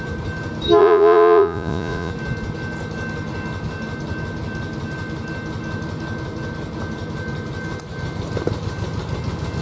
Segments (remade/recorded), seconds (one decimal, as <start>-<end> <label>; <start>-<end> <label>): 0.0-0.8 recorded; 0.8-2.1 remade; 2.1-9.6 recorded